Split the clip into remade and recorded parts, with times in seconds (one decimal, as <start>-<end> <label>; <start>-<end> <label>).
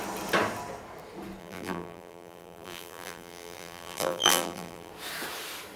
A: 0.0-1.4 recorded; 1.4-4.9 remade; 4.9-5.8 recorded